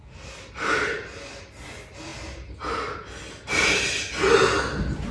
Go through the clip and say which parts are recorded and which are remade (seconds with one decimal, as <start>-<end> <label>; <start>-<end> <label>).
0.0-5.1 recorded